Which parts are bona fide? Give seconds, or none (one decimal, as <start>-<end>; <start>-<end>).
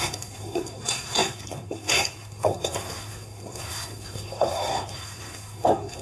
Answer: none